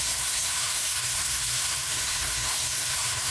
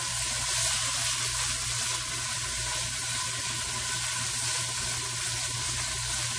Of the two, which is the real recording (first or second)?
second